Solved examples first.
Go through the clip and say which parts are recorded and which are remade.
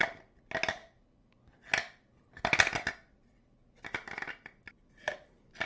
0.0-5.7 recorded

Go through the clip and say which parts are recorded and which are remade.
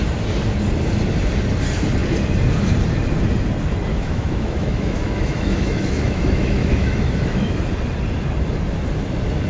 0.0-3.9 recorded; 3.9-7.6 remade; 7.6-9.5 recorded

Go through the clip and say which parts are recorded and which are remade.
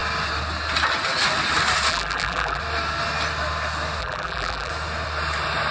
0.0-1.9 recorded; 1.9-2.6 remade; 2.6-4.0 recorded; 4.0-4.7 remade; 4.7-5.7 recorded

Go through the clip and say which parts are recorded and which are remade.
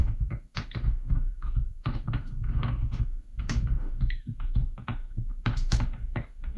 0.0-6.6 remade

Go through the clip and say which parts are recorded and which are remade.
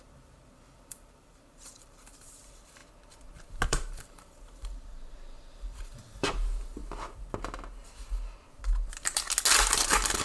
0.0-2.8 remade; 2.8-3.7 recorded; 3.7-6.8 remade; 6.8-10.2 recorded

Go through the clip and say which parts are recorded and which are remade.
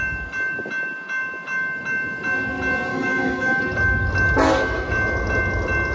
0.0-2.9 recorded; 2.9-3.6 remade; 3.6-5.9 recorded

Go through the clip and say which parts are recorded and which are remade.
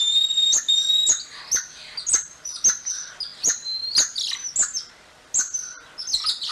0.0-6.5 recorded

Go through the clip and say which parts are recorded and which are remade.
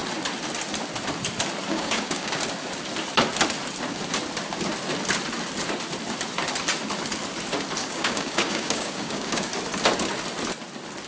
0.0-1.7 recorded; 1.7-2.3 remade; 2.3-7.8 recorded; 7.8-9.5 remade; 9.5-11.1 recorded